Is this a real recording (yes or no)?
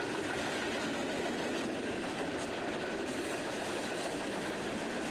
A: yes